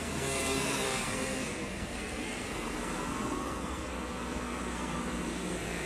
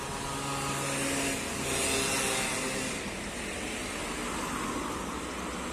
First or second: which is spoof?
first